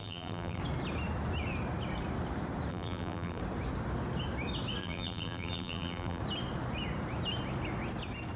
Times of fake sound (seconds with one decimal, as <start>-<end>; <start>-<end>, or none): 0.0-0.6; 2.7-3.4; 4.8-6.2

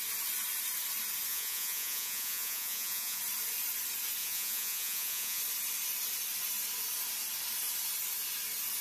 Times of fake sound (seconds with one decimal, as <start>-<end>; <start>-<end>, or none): 1.3-3.2; 4.2-5.4

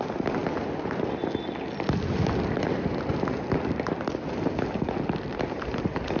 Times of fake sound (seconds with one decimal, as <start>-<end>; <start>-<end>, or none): none

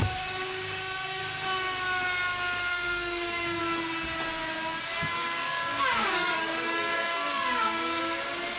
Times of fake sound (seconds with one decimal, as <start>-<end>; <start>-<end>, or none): 0.0-1.2; 2.7-3.6; 5.2-8.0

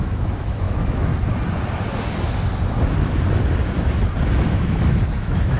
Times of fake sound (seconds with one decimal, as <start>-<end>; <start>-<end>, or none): 0.0-1.1; 4.5-5.6

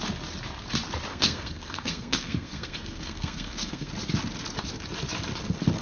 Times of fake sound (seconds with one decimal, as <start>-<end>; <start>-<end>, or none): 1.1-3.9